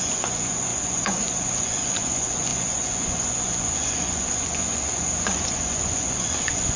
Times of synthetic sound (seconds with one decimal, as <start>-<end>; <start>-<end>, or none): 0.0-6.8